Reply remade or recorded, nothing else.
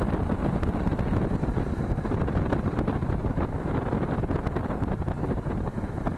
recorded